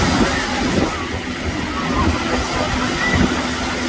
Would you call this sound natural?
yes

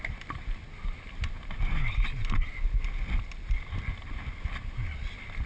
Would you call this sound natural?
yes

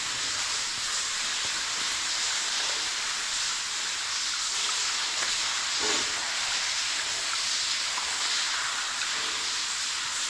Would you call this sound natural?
yes